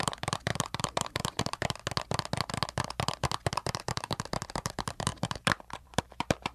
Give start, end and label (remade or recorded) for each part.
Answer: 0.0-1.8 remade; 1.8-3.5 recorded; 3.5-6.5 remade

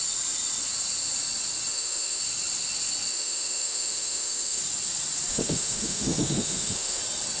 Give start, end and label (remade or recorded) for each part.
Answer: 0.0-1.7 recorded; 1.7-2.2 remade; 2.2-3.1 recorded; 3.1-4.6 remade; 4.6-5.3 recorded; 5.3-7.0 remade; 7.0-7.4 recorded

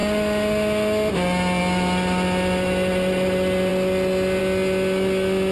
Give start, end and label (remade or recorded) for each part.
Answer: 0.0-5.5 recorded

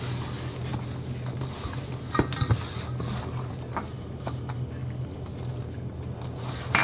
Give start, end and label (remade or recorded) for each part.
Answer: 0.0-6.8 recorded

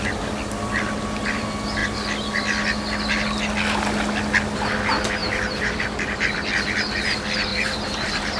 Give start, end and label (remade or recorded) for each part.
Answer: 0.0-5.2 recorded; 5.2-5.8 remade; 5.8-7.5 recorded; 7.5-8.4 remade

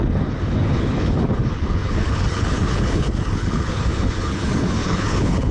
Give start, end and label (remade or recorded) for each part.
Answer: 0.0-5.5 remade

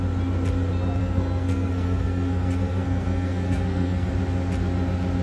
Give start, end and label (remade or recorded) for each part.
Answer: 0.0-1.0 recorded; 1.0-4.1 remade; 4.1-5.2 recorded

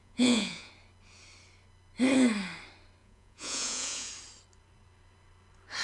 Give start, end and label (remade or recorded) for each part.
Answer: 0.0-0.7 remade; 0.7-3.0 recorded; 3.0-4.1 remade; 4.1-5.8 recorded